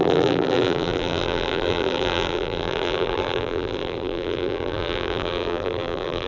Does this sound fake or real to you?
fake